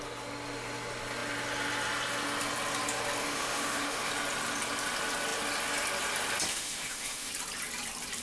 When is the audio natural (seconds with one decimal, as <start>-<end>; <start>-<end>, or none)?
0.0-3.2; 4.1-6.5; 7.3-8.2